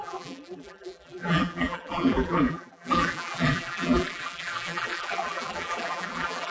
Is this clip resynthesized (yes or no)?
yes